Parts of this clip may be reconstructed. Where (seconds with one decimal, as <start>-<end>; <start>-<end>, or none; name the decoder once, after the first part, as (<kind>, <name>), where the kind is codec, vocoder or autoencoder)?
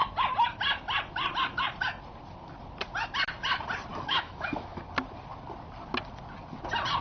3.9-4.8 (autoencoder, DAC-VAE)